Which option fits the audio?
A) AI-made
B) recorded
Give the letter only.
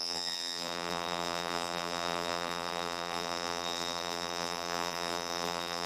A